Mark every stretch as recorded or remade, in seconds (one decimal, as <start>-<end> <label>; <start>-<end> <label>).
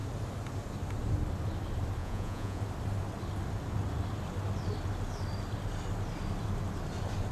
0.0-2.0 recorded; 2.0-2.6 remade; 2.6-7.3 recorded